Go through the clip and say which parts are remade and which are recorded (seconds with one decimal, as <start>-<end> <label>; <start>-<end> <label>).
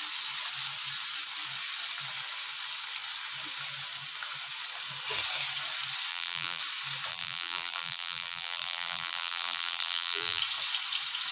0.0-6.1 recorded; 6.1-6.6 remade; 6.6-7.1 recorded; 7.1-10.4 remade; 10.4-11.3 recorded